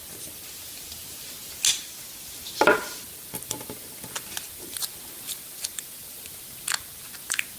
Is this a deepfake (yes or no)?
no